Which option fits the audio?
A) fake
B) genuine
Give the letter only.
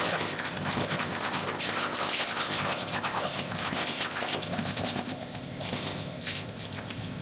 A